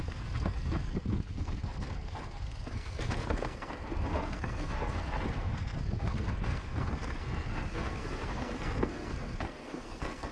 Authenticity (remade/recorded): remade